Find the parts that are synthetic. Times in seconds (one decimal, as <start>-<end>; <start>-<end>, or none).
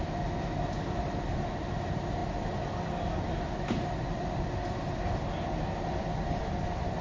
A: none